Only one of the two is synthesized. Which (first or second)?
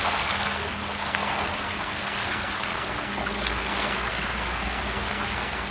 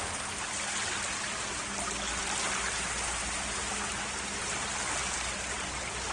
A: first